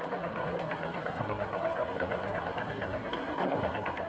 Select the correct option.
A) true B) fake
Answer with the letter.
B